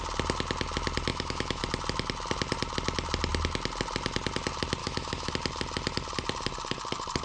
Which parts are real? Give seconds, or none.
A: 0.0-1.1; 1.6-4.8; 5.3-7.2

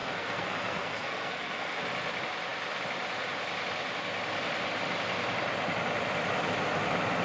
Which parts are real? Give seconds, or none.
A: 1.8-7.2

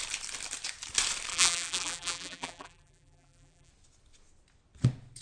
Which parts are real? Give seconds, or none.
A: 0.0-1.3; 3.7-5.2

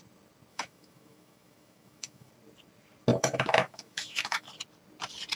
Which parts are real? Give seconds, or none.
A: 0.0-0.5; 2.3-3.1; 4.5-5.4

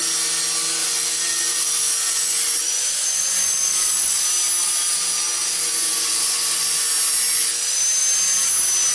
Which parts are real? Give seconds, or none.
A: 0.0-0.8; 4.2-5.4; 6.9-8.9

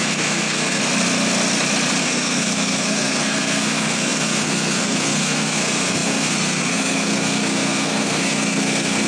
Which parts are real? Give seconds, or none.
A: 0.8-2.0

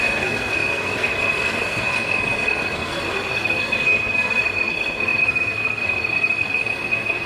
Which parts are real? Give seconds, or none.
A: none

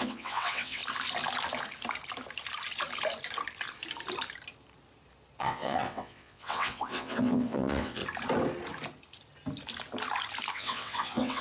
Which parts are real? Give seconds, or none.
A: 0.8-5.4; 8.0-10.5